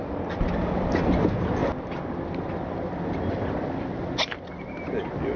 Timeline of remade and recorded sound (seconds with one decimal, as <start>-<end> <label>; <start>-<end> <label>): 0.0-5.4 recorded